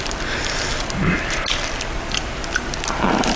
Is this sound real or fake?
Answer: real